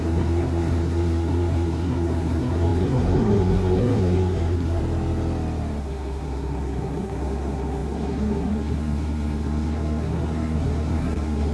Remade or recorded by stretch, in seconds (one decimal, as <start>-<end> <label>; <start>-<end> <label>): 0.0-4.8 remade; 4.8-5.8 recorded; 5.8-11.5 remade